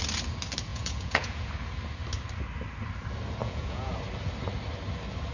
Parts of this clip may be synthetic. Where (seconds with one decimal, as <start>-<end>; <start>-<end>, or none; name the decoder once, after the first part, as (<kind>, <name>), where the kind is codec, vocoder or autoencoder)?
0.7-1.5 (vocoder, Vocos); 3.4-3.9